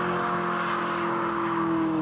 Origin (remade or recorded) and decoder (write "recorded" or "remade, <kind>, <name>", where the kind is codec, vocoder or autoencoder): remade, codec, DAC